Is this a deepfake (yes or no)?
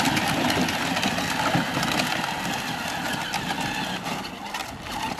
no